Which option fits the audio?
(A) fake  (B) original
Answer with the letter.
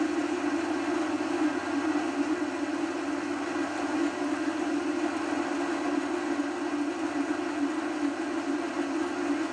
B